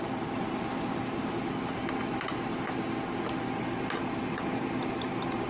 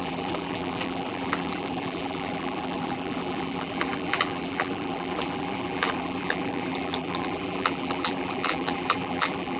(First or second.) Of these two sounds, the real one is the first